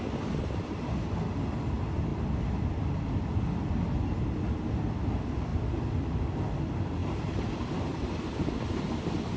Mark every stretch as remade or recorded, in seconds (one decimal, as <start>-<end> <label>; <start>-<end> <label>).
0.0-9.4 recorded